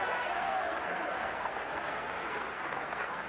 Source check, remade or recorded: remade